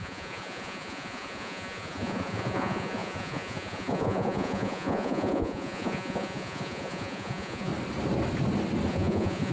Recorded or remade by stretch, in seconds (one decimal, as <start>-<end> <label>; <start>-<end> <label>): 0.0-7.7 remade; 7.7-8.9 recorded; 8.9-9.5 remade